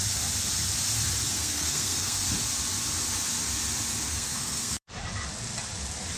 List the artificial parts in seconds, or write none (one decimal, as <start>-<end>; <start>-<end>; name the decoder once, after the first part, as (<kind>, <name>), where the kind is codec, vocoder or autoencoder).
1.3-2.3 (codec, SNAC); 4.1-4.9